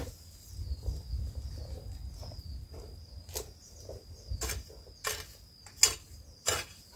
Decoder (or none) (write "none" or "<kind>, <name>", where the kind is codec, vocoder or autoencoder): none